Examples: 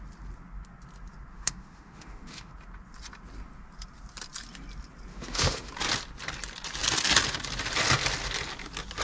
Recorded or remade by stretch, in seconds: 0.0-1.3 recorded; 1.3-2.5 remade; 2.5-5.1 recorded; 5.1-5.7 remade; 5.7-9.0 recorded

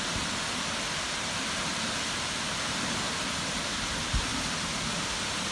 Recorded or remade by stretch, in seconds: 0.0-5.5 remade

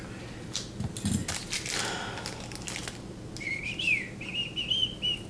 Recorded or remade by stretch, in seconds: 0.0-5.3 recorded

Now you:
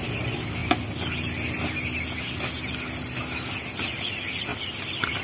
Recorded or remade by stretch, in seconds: 0.0-5.2 recorded